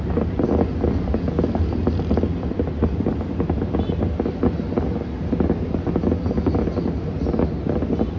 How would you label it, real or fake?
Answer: real